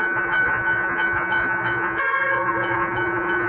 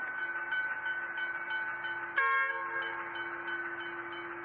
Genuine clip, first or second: second